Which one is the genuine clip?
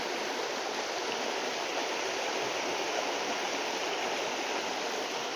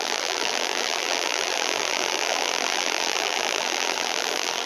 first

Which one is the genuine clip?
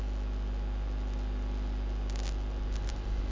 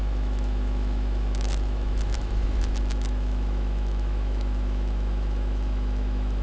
first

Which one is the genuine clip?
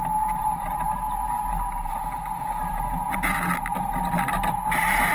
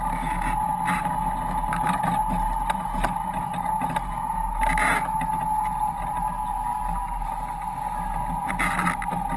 second